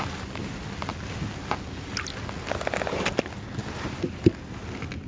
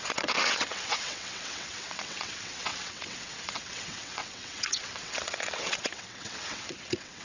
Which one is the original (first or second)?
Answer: first